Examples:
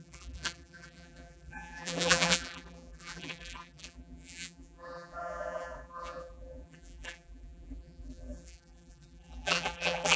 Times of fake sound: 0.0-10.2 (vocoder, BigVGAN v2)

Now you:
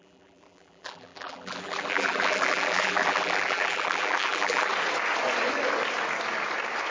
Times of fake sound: 0.0-4.7 (vocoder, BigVGAN v2)

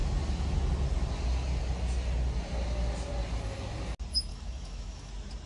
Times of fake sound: 4.3-5.1 (autoencoder, DAC-VAE)

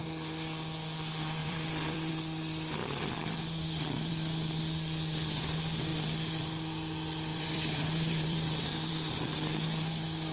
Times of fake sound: 1.4-2.1 (vocoder, BigVGAN v2); 2.8-4.1; 7.3-8.9

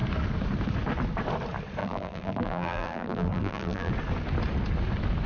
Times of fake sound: 1.8-3.9 (vocoder, BigVGAN v2)

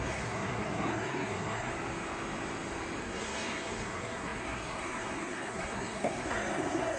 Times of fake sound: 0.0-1.7 (codec, SNAC); 3.0-7.0